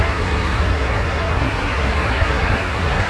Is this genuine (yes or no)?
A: no